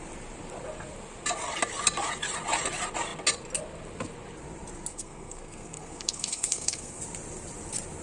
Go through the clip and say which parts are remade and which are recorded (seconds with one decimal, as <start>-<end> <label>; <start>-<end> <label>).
0.0-4.9 recorded; 4.9-7.0 remade; 7.0-8.0 recorded